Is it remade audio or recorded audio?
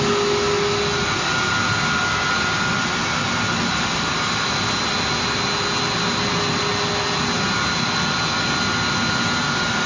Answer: recorded